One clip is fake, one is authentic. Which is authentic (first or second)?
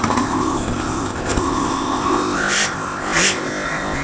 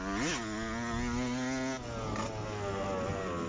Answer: second